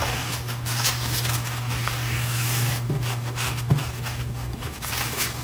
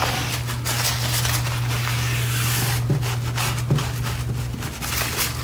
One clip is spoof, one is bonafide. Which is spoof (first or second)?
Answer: first